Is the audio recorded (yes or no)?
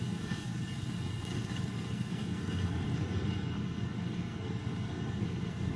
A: no